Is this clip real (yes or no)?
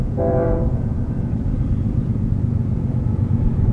no